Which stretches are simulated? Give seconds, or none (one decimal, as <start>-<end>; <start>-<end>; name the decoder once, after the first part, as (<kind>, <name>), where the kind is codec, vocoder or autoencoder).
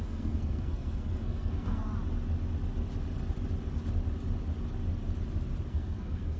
0.0-1.9 (codec, SNAC); 5.7-6.4